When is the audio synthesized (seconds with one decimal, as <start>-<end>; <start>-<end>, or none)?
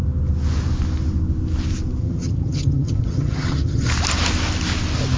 2.0-3.9